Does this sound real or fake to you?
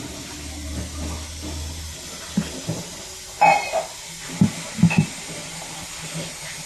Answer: real